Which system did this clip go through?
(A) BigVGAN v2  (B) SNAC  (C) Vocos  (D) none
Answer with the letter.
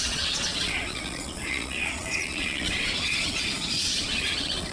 C